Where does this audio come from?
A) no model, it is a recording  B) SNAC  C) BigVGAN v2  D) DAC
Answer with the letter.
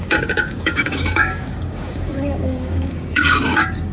D